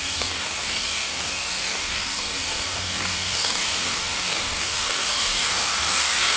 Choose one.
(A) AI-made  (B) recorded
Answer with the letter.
A